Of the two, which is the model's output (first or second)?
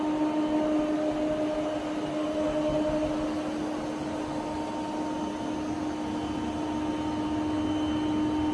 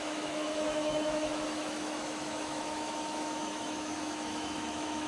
second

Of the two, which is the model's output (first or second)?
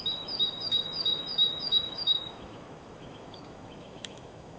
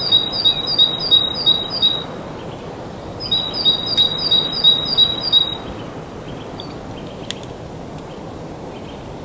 first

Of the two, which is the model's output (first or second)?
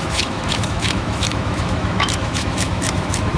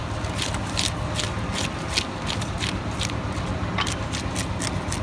first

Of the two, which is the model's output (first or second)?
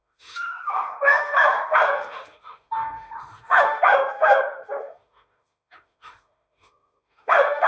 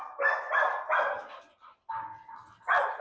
first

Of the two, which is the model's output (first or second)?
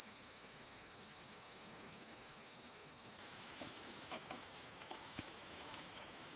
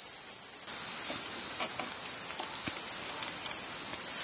first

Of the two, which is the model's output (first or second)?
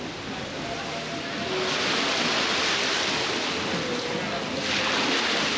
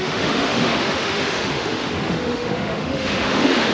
second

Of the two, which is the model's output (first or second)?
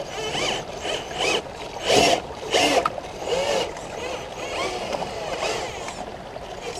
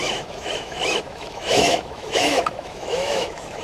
second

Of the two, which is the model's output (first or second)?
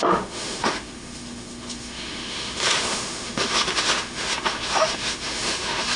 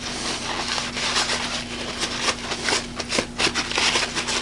first